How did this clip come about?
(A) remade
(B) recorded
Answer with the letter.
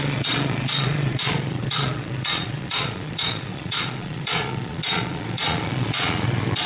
A